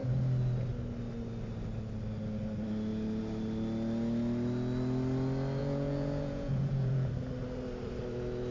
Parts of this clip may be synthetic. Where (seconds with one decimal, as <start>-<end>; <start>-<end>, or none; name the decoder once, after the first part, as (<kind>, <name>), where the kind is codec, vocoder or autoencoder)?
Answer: 5.6-7.1 (vocoder, Vocos)